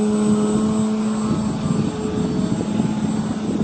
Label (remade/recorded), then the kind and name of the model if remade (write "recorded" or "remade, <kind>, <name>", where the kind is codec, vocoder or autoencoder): recorded